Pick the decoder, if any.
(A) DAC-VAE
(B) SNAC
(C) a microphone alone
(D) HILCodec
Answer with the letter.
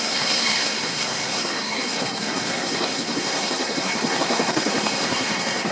B